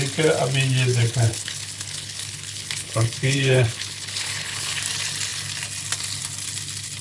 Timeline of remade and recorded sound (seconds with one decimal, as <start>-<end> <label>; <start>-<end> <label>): 0.0-0.9 recorded; 0.9-4.8 remade; 4.8-7.0 recorded